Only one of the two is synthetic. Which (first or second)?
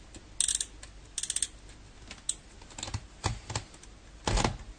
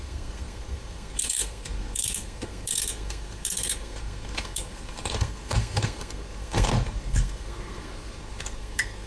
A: second